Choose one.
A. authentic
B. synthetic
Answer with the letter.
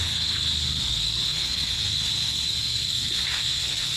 B